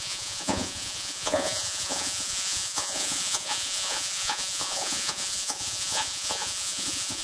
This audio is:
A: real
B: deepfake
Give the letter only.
B